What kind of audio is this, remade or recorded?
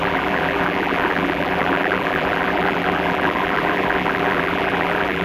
remade